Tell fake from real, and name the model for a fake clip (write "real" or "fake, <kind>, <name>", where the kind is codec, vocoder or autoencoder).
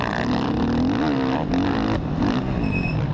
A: real